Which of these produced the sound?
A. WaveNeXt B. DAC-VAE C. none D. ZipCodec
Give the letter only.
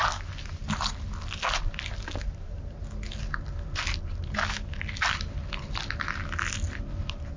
C